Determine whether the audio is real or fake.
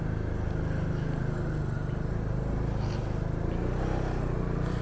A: real